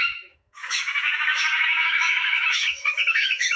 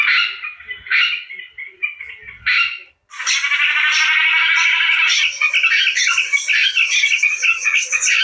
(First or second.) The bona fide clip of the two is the second